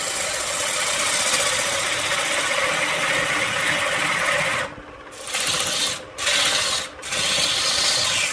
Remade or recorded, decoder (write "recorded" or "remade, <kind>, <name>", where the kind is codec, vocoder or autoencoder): recorded